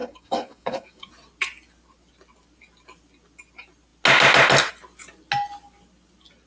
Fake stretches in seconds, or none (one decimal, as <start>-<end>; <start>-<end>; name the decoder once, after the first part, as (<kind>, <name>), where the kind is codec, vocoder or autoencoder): 0.0-1.1 (codec, DAC)